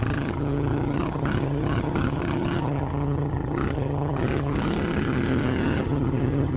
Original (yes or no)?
no